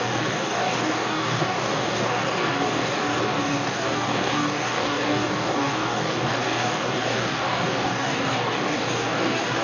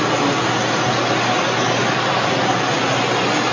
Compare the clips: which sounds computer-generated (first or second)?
first